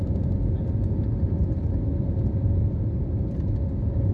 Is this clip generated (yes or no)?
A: no